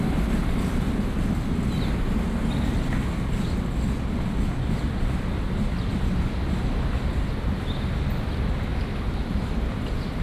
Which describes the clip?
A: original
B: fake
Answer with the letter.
A